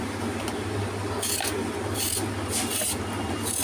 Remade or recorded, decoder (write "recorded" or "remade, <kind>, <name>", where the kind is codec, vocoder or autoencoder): recorded